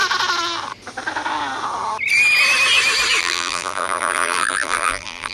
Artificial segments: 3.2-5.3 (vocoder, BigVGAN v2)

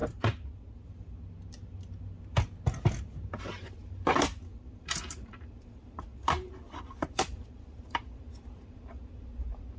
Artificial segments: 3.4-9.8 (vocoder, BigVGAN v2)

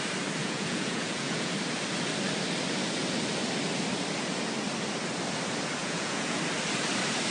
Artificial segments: 0.4-1.5 (vocoder, Vocos); 5.8-6.4